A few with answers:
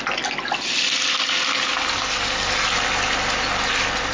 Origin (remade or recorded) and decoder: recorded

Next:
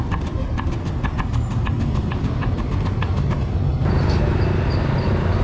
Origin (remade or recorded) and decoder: recorded